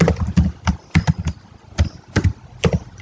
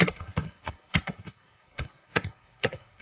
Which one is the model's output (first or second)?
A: second